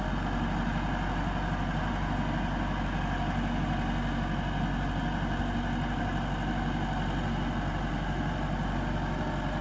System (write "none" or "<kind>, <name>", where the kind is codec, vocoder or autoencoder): none